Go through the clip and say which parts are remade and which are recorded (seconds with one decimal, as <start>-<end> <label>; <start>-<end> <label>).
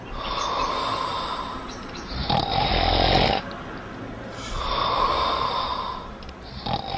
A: 0.0-1.1 recorded; 1.1-2.7 remade; 2.7-7.0 recorded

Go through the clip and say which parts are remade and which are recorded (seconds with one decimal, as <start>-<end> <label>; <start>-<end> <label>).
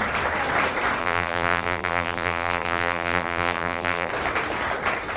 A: 0.0-1.0 recorded; 1.0-4.1 remade; 4.1-5.2 recorded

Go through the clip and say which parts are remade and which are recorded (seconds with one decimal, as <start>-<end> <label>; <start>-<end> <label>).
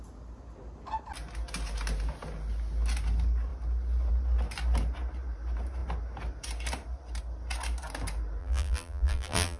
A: 0.0-8.4 recorded; 8.4-9.6 remade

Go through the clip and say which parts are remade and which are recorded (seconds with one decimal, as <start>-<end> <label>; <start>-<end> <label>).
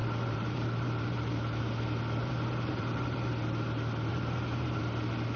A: 0.0-1.3 remade; 1.3-2.2 recorded; 2.2-3.3 remade; 3.3-4.1 recorded; 4.1-4.8 remade; 4.8-5.4 recorded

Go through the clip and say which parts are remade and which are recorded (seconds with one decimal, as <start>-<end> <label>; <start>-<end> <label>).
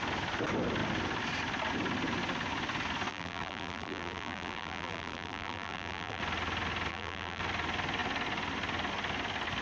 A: 0.0-3.1 recorded; 3.1-6.2 remade; 6.2-6.9 recorded; 6.9-7.4 remade; 7.4-9.6 recorded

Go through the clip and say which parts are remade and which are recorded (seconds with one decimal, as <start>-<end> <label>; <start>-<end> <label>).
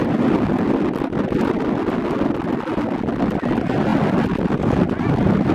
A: 0.0-5.5 recorded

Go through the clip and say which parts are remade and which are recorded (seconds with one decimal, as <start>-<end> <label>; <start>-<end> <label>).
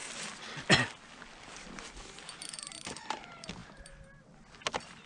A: 0.0-5.1 recorded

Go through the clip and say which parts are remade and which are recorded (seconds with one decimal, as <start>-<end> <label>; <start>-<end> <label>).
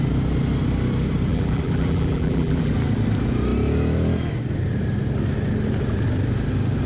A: 0.0-1.3 recorded; 1.3-2.7 remade; 2.7-6.9 recorded